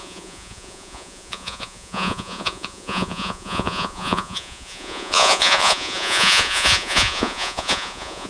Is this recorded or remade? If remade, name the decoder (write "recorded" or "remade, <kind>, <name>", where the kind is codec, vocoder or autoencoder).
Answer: remade, vocoder, Vocos